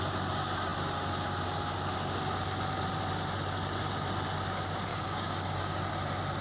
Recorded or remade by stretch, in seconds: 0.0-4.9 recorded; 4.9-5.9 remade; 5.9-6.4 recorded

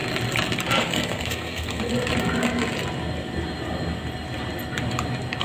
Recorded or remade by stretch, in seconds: 0.0-0.8 recorded; 0.8-1.9 remade; 1.9-5.4 recorded

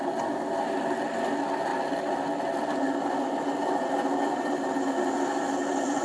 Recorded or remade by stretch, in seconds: 0.0-6.0 recorded

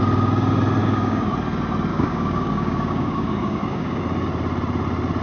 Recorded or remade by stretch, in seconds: 0.0-0.8 recorded; 0.8-1.3 remade; 1.3-1.9 recorded; 1.9-4.0 remade; 4.0-5.2 recorded